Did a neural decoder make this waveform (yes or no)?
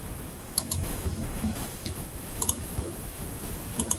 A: yes